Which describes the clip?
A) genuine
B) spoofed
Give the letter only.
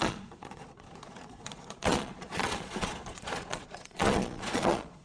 B